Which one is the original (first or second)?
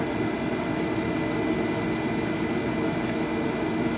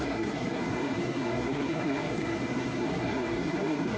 first